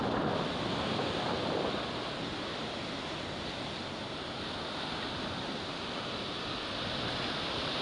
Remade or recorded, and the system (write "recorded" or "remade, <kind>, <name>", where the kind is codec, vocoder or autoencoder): recorded